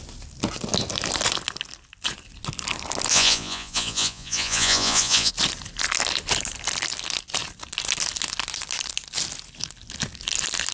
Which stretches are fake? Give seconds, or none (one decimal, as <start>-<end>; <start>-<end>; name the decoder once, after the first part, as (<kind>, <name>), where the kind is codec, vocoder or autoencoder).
3.1-5.3 (vocoder, Vocos)